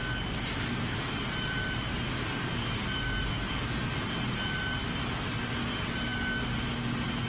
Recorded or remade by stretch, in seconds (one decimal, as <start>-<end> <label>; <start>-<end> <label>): 0.0-7.3 recorded